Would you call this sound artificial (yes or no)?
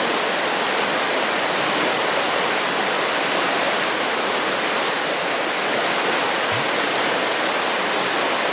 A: no